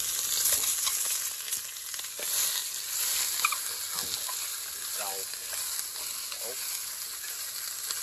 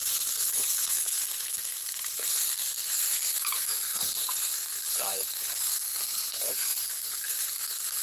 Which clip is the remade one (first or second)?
second